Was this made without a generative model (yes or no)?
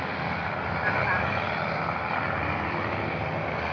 yes